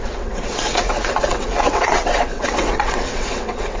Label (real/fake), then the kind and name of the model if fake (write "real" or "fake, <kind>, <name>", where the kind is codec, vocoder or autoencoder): fake, vocoder, WaveNeXt